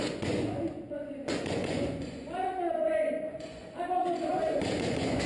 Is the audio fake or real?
fake